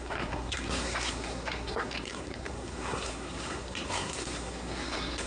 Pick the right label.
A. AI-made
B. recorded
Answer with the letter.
A